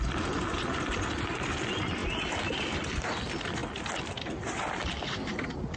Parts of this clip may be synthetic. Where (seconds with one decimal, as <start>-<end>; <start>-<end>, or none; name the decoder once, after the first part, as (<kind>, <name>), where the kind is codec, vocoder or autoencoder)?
none